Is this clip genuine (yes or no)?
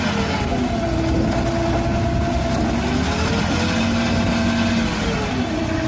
yes